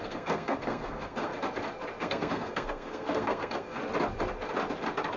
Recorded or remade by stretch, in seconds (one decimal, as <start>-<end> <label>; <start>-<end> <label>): 0.0-1.3 remade; 1.3-2.0 recorded; 2.0-3.8 remade; 3.8-5.2 recorded